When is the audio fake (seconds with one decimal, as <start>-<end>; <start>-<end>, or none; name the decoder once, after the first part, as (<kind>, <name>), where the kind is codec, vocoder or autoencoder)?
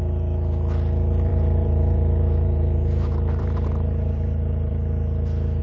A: 1.3-4.7 (vocoder, BigVGAN v2)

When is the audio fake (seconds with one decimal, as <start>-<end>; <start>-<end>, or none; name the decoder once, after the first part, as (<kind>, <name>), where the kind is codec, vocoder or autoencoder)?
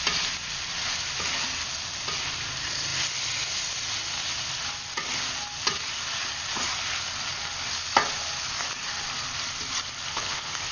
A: 10.1-10.7 (codec, HILCodec)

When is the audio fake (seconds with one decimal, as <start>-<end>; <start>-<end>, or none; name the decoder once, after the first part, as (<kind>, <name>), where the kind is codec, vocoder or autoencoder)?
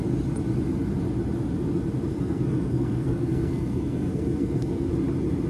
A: 2.1-4.9 (codec, SNAC)